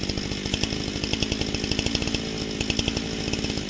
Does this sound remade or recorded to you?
recorded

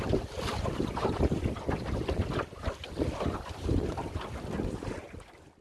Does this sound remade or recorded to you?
recorded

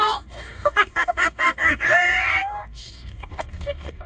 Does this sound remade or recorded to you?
remade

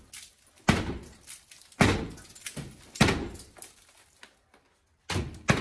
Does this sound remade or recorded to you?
recorded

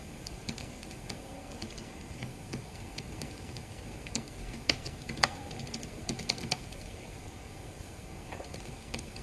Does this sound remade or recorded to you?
remade